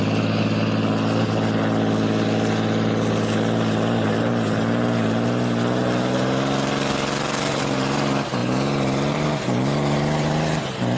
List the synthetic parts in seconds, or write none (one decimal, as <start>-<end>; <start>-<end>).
none